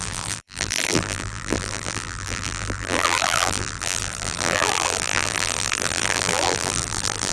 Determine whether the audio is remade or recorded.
remade